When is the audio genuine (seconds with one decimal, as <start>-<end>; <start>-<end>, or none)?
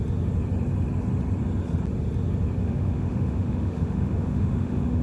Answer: 0.0-2.6